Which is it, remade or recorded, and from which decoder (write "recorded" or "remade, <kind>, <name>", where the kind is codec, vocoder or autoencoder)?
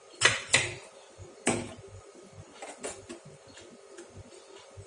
recorded